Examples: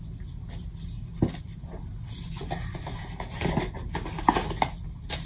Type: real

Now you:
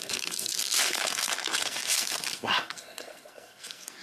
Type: fake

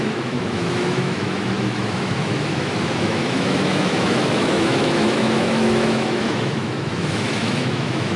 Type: fake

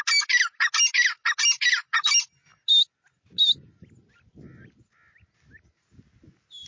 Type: real